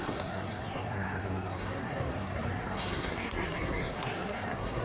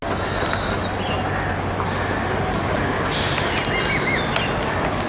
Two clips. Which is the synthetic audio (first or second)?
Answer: first